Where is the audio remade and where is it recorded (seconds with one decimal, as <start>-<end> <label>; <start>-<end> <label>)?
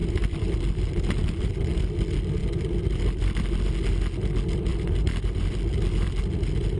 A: 0.0-0.5 remade; 0.5-2.4 recorded; 2.4-3.7 remade; 3.7-4.7 recorded; 4.7-6.2 remade; 6.2-6.8 recorded